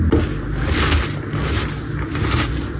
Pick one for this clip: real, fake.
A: real